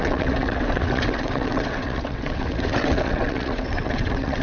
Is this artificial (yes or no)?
yes